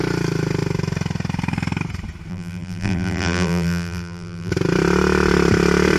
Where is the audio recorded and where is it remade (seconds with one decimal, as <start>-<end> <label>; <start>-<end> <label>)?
0.0-2.3 recorded; 2.3-4.5 remade; 4.5-6.0 recorded